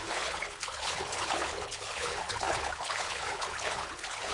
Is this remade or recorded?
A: remade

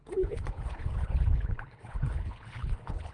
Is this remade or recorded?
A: remade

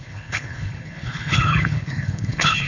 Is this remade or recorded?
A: remade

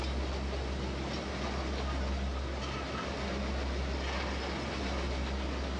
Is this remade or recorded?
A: recorded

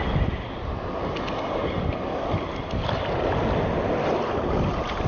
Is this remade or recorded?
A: recorded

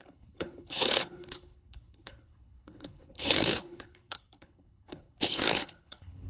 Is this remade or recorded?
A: remade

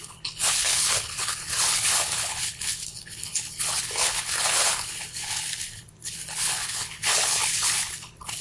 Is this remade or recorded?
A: remade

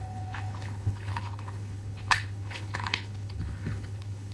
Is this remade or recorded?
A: remade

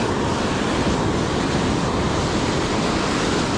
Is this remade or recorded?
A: recorded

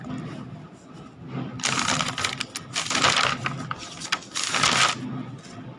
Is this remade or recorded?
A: recorded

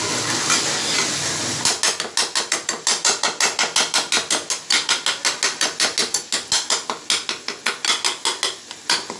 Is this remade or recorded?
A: recorded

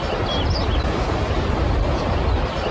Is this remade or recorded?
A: recorded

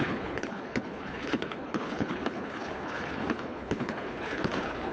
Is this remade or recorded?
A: remade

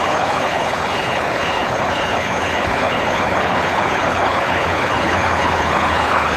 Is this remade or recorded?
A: remade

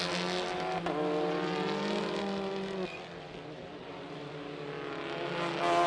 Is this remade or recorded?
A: recorded